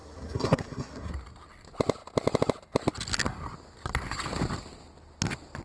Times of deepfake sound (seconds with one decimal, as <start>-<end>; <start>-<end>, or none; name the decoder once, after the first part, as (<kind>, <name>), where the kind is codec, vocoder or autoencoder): 0.0-1.1 (codec, SNAC)